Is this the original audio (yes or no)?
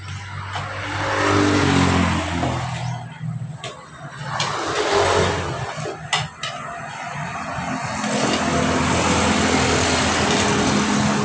yes